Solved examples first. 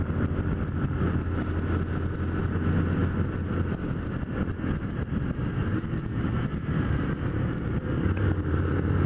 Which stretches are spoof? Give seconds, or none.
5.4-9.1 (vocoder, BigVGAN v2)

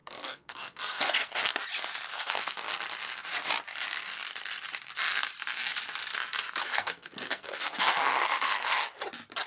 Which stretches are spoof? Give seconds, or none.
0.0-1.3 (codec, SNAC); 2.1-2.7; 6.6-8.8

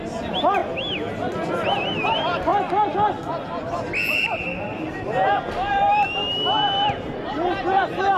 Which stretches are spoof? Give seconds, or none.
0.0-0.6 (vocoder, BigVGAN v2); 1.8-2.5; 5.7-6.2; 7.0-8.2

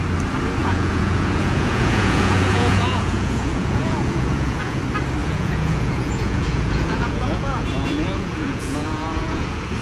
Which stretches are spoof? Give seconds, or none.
0.6-4.8 (vocoder, Vocos); 5.2-9.8

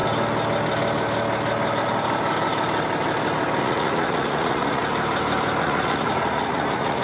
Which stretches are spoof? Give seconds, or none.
3.6-4.8 (vocoder, Vocos); 5.6-7.0

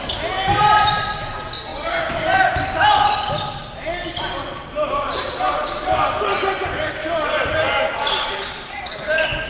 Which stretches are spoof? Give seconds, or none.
none

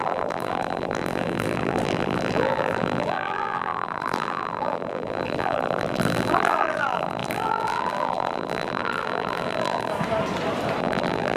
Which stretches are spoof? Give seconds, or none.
0.0-9.9 (vocoder, BigVGAN v2); 10.8-11.4